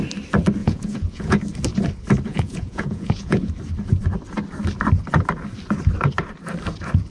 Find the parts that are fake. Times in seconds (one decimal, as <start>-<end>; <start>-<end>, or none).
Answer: 0.6-1.4; 2.3-3.5